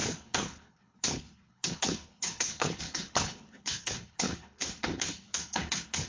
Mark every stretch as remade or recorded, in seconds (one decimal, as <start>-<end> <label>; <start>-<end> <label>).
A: 0.0-6.1 remade